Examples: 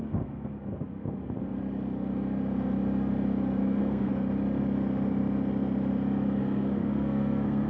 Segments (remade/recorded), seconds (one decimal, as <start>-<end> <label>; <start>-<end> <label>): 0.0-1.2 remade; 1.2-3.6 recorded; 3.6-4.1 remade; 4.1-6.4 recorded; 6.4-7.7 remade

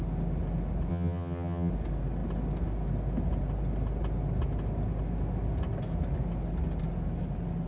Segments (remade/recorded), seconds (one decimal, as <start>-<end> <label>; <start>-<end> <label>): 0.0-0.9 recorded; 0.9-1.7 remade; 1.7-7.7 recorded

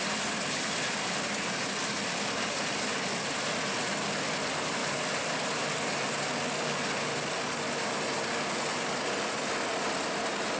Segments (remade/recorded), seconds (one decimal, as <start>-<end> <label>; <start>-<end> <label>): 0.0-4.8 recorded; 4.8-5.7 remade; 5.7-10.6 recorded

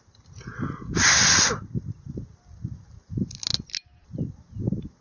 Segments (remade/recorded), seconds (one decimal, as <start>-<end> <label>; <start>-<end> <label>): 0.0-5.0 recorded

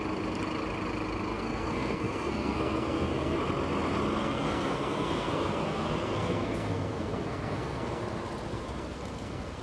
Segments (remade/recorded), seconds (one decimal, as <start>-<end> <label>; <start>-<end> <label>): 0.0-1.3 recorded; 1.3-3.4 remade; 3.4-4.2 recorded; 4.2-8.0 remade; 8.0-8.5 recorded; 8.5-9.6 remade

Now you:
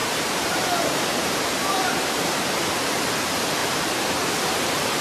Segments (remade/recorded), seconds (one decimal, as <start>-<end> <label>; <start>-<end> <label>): 0.0-3.0 remade; 3.0-3.6 recorded; 3.6-5.0 remade

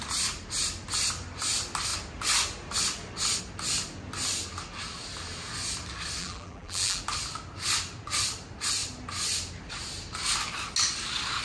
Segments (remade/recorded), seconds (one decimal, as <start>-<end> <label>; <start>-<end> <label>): 0.0-6.2 recorded; 6.2-7.0 remade; 7.0-11.4 recorded